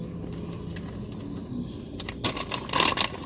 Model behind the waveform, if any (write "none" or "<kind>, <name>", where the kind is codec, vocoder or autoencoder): none